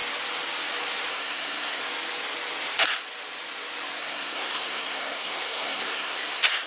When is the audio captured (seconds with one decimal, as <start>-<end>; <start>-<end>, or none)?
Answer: 0.0-1.1; 1.8-4.0